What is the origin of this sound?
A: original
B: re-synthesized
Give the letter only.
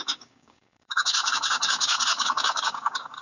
B